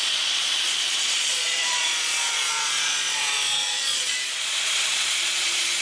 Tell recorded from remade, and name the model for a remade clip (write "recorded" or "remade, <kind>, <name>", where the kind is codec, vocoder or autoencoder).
remade, vocoder, Vocos